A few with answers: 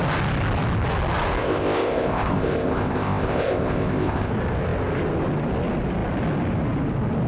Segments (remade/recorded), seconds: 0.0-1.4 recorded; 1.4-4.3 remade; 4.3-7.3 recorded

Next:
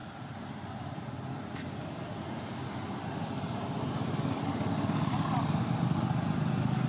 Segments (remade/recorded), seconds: 0.0-6.9 recorded

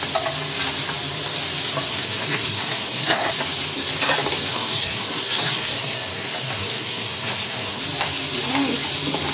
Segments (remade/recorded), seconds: 0.0-1.9 recorded; 1.9-3.3 remade; 3.3-4.5 recorded; 4.5-7.8 remade; 7.8-9.3 recorded

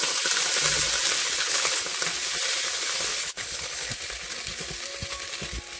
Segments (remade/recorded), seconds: 0.0-1.2 recorded; 1.2-1.8 remade; 1.8-3.1 recorded; 3.1-3.9 remade; 3.9-5.8 recorded

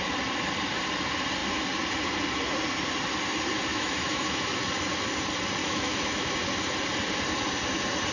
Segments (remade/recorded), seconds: 0.0-3.7 recorded; 3.7-4.6 remade; 4.6-5.6 recorded; 5.6-6.3 remade; 6.3-8.1 recorded

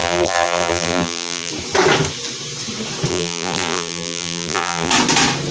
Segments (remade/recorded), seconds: 0.0-1.5 remade; 1.5-3.1 recorded; 3.1-4.9 remade; 4.9-5.5 recorded

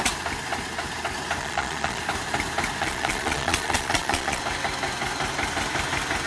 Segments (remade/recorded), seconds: 0.0-1.4 recorded; 1.4-2.0 remade; 2.0-2.8 recorded; 2.8-4.4 remade; 4.4-6.3 recorded